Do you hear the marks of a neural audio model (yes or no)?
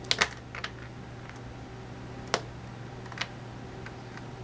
no